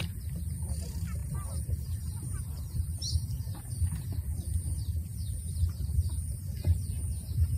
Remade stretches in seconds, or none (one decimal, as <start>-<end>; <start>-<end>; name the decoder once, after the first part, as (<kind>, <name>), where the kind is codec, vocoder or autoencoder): 1.2-3.6 (vocoder, BigVGAN v2)